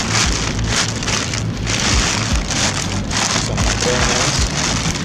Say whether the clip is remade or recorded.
recorded